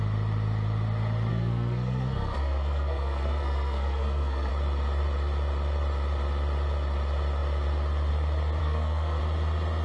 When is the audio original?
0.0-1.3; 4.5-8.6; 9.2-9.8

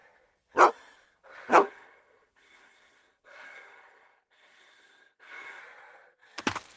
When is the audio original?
0.0-1.5; 5.6-6.8